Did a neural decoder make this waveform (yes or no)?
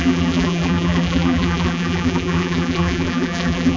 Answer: yes